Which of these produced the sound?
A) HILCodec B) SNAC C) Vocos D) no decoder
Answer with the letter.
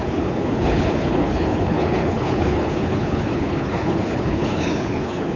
A